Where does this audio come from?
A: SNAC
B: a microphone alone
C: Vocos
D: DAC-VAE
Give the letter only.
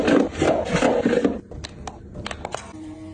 B